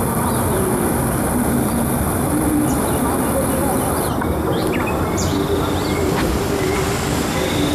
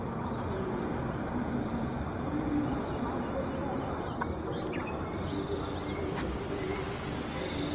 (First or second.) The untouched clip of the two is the second